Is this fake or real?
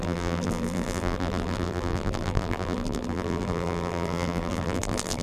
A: fake